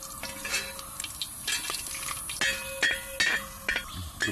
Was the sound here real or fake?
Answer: real